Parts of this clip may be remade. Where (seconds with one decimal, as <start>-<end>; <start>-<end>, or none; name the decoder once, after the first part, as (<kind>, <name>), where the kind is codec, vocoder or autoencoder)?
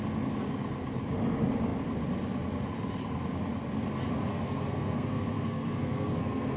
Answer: 4.3-6.6 (codec, SNAC)